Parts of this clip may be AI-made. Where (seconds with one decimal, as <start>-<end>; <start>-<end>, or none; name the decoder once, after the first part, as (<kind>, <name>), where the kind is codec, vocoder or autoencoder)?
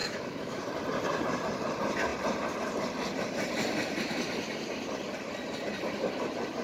0.0-0.6 (autoencoder, DAC-VAE)